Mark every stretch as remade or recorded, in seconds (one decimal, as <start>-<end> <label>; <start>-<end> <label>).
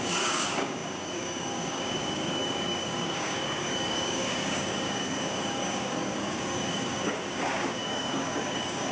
0.0-8.9 remade